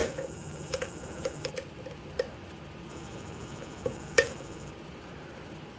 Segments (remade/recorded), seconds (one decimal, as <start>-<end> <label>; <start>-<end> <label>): 0.0-1.5 remade; 1.5-2.9 recorded; 2.9-4.7 remade; 4.7-5.8 recorded